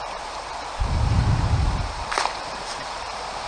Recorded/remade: remade